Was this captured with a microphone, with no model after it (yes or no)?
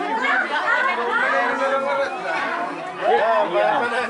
yes